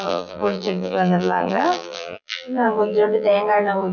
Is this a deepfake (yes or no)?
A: yes